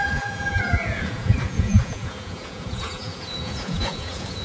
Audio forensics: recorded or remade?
remade